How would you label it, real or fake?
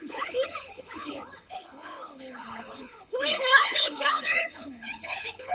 fake